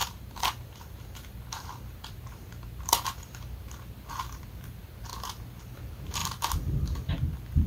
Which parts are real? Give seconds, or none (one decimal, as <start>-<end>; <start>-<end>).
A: 5.1-5.6; 6.2-7.7